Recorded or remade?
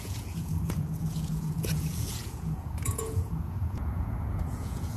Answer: remade